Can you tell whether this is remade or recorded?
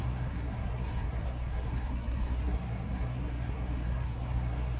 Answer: remade